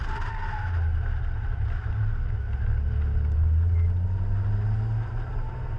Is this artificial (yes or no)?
no